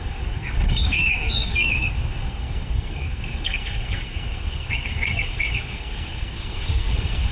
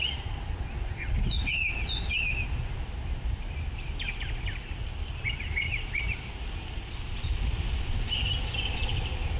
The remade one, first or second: first